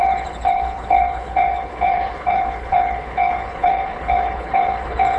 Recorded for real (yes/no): no